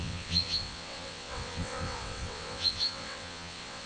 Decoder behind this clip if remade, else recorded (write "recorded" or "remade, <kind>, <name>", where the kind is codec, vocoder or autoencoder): remade, vocoder, WaveNeXt